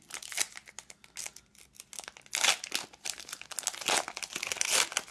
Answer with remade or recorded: recorded